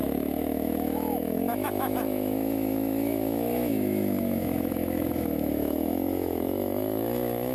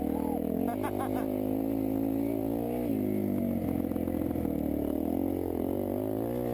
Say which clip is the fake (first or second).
first